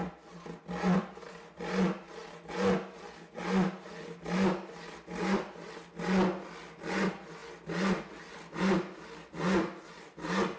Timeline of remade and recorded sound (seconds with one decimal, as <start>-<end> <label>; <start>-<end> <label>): 0.0-10.6 recorded